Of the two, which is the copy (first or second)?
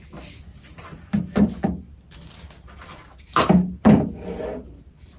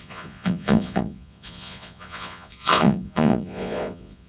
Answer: second